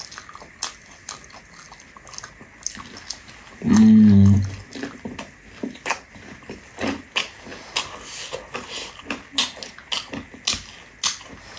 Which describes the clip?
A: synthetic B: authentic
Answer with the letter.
B